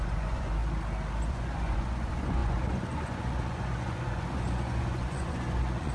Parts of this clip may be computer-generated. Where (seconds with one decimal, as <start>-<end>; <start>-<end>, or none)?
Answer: 0.0-0.6; 1.3-5.9